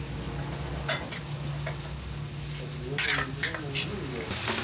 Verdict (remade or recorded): recorded